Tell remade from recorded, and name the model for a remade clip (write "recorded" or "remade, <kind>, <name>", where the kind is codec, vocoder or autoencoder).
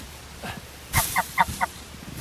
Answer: recorded